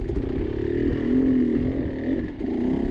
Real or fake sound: real